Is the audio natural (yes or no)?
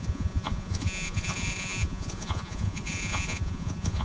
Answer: no